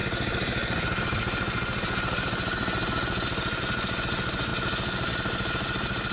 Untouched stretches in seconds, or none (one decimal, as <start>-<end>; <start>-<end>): 0.0-6.1